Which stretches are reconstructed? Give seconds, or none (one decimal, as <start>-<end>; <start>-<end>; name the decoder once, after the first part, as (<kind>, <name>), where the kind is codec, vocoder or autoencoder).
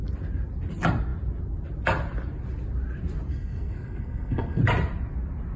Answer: 3.3-4.6 (codec, SNAC)